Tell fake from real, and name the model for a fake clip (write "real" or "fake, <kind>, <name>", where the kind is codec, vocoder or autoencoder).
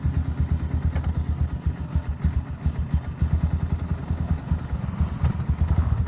real